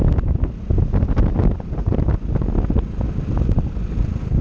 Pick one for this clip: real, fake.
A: real